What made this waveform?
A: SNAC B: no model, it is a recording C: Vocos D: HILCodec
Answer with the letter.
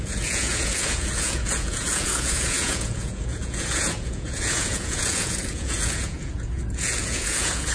C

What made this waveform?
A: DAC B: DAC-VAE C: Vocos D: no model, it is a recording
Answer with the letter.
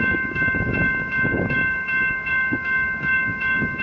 A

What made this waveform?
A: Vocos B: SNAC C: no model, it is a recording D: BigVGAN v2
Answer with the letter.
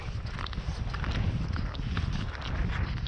C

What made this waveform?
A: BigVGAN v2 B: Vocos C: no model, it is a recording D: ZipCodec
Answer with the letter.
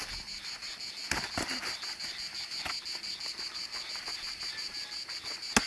C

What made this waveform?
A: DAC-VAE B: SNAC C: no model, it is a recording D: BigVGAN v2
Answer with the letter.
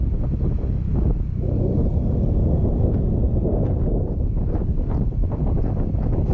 C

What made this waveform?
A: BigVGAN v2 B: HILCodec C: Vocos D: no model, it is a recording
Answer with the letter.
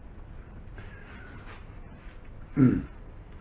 D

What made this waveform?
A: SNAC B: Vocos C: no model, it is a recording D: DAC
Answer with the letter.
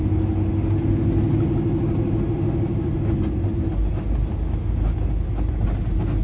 C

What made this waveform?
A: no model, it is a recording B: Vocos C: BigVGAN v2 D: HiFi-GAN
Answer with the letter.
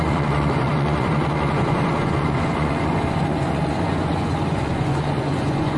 B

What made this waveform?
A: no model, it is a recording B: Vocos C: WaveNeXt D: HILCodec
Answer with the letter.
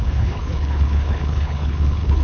D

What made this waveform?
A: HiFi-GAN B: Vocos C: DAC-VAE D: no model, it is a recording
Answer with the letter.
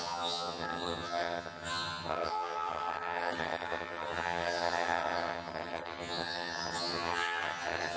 A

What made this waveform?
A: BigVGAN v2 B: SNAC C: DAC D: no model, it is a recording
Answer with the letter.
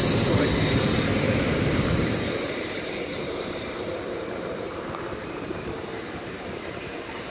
A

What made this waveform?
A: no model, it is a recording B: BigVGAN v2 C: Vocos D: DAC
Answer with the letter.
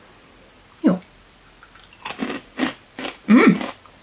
A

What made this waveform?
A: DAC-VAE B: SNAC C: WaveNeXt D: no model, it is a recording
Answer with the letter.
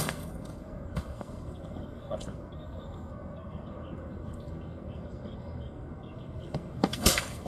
B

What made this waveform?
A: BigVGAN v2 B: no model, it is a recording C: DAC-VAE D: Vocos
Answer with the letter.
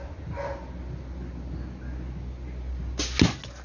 B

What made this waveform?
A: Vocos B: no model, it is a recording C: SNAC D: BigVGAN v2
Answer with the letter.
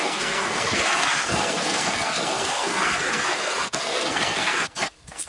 C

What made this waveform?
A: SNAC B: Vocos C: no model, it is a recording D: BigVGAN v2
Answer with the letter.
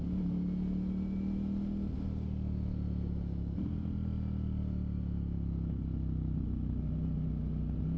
C